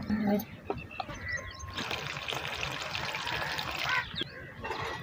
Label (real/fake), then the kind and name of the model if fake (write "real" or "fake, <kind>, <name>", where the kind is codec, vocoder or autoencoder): real